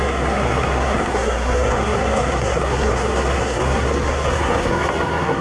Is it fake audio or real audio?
fake